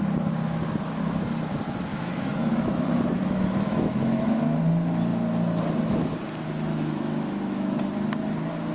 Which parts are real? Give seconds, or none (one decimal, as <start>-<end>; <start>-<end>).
0.0-1.9; 4.6-6.7; 7.8-8.7